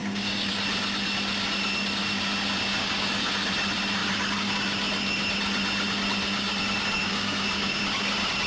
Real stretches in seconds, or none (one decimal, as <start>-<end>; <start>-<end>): 0.6-2.8; 3.3-7.0; 7.8-8.5